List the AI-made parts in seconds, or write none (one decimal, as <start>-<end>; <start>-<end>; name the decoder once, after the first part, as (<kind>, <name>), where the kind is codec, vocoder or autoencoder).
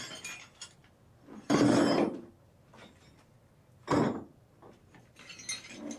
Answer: none